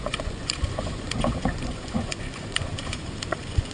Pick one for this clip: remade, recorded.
remade